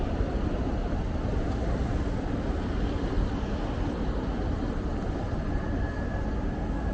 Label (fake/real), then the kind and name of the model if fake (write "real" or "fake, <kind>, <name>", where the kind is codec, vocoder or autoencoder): real